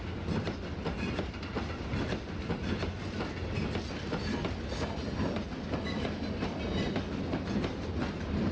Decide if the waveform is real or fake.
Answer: real